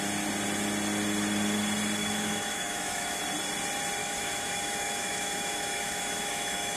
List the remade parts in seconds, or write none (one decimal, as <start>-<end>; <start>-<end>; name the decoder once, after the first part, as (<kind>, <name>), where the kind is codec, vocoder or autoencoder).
2.0-3.2 (autoencoder, DAC-VAE); 4.0-6.8